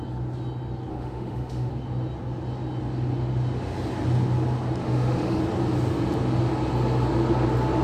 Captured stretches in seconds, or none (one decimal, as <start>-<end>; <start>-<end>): 0.0-0.9; 1.7-4.8; 5.4-7.8